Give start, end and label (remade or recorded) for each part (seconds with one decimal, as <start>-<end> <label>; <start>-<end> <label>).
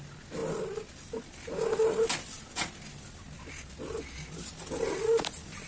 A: 0.0-5.7 recorded